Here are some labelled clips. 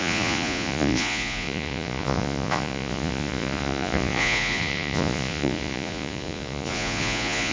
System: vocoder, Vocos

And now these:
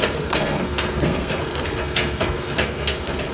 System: codec, SNAC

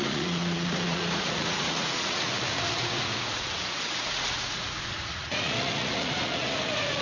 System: vocoder, Vocos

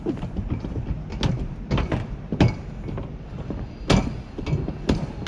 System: none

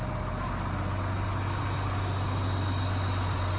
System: none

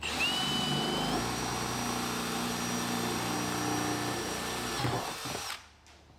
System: none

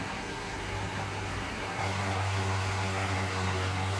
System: codec, SNAC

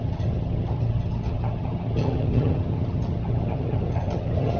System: vocoder, HiFi-GAN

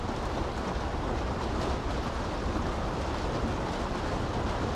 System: none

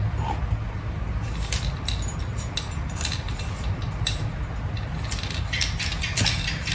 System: none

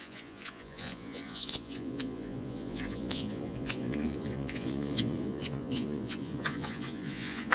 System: vocoder, Vocos